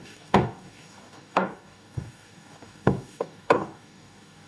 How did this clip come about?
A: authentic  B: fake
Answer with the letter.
B